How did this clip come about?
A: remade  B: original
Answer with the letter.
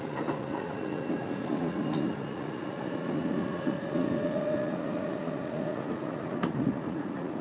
A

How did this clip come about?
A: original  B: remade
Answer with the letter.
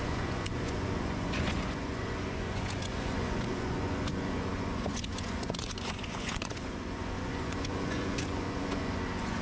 B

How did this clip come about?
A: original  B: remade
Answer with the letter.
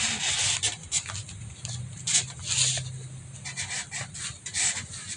A